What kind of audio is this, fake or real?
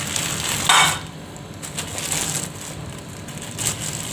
real